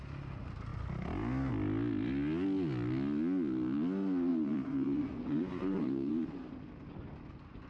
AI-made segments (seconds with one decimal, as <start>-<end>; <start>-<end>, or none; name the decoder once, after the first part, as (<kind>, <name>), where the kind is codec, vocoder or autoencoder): 4.3-6.1 (vocoder, Vocos)

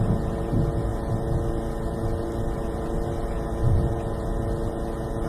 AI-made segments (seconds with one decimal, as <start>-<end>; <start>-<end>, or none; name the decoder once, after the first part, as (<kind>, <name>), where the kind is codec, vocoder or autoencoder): none

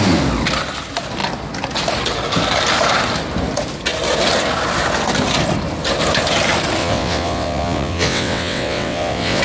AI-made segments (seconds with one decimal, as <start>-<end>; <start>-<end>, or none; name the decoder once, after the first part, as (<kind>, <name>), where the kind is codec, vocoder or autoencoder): 6.8-9.4 (vocoder, WaveNeXt)

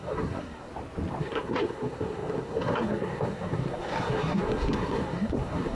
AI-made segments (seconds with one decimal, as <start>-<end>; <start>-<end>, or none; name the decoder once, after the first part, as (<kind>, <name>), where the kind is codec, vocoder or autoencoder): 0.0-0.7 (codec, SNAC); 1.2-5.7

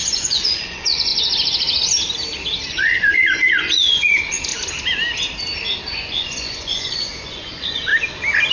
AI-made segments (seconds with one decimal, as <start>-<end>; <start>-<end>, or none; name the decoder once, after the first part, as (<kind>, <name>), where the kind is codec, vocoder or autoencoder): 0.0-1.1 (vocoder, Vocos); 2.7-4.5; 5.9-7.9

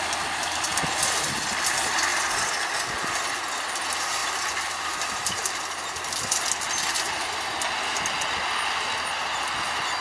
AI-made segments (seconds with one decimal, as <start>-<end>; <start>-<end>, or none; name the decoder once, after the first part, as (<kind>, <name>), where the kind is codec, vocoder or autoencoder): none

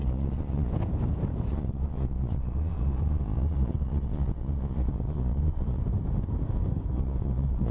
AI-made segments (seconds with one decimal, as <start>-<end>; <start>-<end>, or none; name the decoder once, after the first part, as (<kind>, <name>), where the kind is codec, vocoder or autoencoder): 0.0-0.7 (vocoder, Vocos); 1.5-5.8; 6.9-7.7

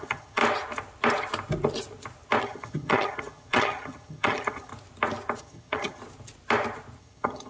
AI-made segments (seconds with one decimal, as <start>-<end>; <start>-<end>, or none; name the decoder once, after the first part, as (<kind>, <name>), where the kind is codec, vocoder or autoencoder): 0.0-0.4 (vocoder, HiFi-GAN); 2.4-4.7; 5.4-6.0; 7.0-7.5